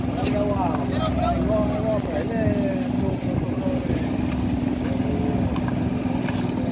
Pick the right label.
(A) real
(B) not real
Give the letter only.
A